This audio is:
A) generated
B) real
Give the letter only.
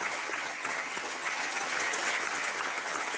A